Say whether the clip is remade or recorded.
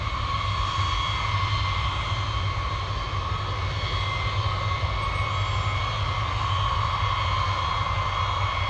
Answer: recorded